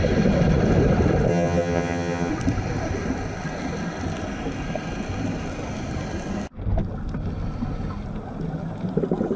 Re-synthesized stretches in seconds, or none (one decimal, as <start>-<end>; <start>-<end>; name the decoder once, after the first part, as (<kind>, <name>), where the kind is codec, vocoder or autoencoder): 1.3-2.3 (vocoder, HiFi-GAN)